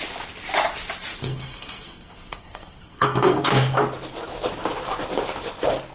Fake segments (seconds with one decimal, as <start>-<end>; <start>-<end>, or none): 1.2-3.8